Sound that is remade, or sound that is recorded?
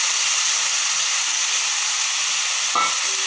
recorded